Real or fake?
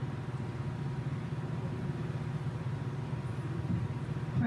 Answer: real